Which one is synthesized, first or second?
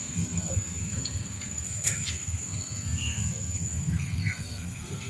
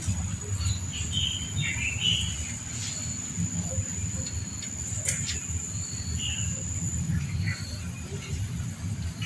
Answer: first